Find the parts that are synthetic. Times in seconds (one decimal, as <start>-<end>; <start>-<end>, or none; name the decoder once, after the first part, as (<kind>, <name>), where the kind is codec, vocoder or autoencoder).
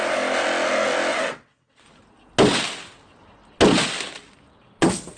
1.1-1.8 (vocoder, WaveNeXt)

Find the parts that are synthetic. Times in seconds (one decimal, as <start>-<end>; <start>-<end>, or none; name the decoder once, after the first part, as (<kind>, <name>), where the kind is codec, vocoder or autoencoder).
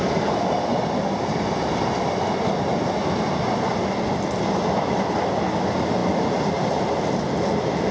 none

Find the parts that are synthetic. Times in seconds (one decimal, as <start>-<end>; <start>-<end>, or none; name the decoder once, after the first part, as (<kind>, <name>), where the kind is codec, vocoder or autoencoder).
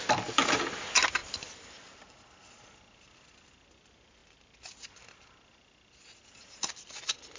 none